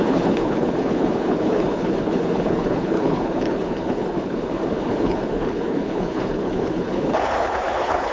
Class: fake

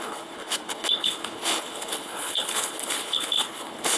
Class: fake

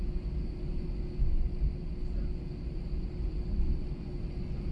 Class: real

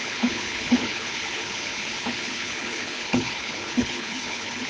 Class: fake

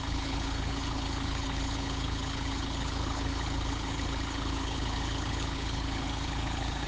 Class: fake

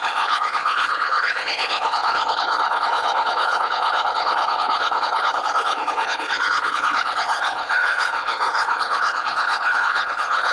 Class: fake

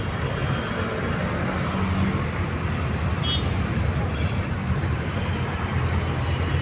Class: real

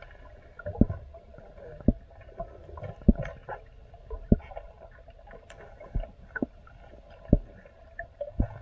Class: real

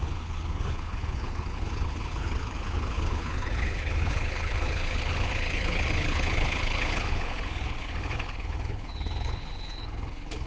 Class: fake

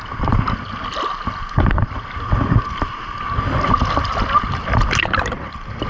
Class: real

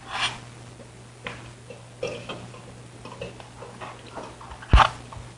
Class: real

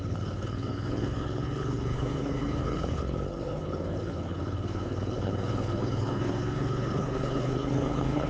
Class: fake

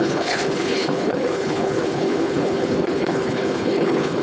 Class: fake